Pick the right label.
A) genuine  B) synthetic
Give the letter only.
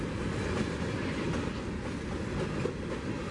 A